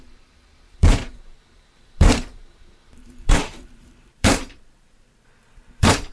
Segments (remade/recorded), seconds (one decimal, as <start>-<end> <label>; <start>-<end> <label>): 0.0-6.1 remade